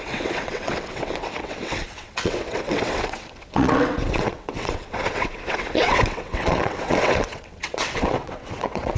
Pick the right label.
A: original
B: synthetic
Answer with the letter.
B